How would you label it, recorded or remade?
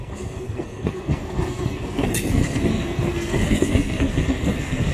remade